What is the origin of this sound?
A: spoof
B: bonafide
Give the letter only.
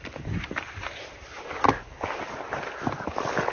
B